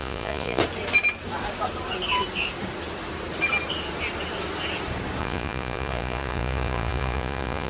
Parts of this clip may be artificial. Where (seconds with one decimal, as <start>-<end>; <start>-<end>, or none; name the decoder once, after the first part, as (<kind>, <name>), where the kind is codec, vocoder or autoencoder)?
0.0-0.6 (vocoder, Vocos); 5.2-7.7